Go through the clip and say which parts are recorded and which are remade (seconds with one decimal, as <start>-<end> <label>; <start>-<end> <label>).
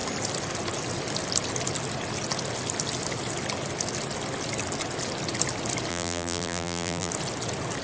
0.0-5.9 recorded; 5.9-7.1 remade; 7.1-7.8 recorded